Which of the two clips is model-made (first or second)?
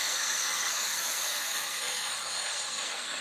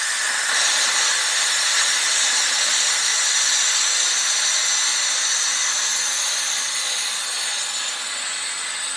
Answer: first